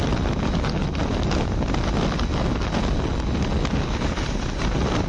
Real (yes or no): yes